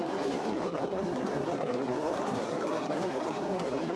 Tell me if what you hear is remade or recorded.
remade